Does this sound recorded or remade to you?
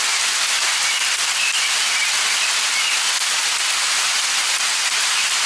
recorded